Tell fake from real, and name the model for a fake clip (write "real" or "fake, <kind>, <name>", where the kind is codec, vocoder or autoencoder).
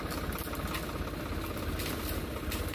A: real